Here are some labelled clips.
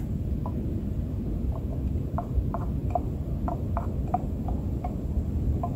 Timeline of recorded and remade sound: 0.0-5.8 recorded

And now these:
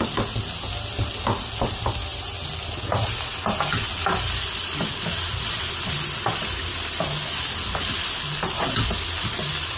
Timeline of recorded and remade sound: 0.0-9.8 recorded

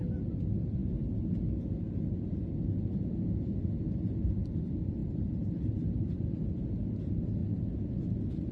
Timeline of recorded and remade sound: 0.0-5.0 recorded; 5.0-6.5 remade; 6.5-8.5 recorded

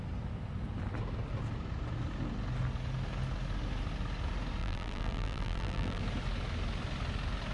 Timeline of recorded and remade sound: 0.0-4.6 recorded; 4.6-6.0 remade; 6.0-7.5 recorded